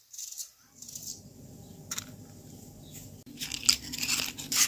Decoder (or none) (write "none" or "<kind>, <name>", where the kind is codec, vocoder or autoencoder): none